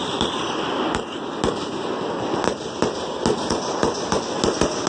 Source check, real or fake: real